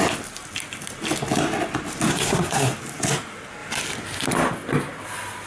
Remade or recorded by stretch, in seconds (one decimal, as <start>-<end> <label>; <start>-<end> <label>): 0.0-2.1 recorded; 2.1-2.7 remade; 2.7-5.5 recorded